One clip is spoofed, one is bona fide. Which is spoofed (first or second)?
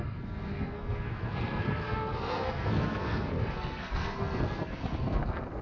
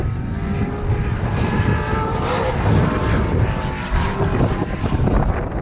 first